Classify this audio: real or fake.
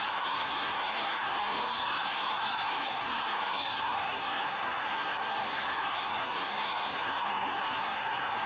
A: fake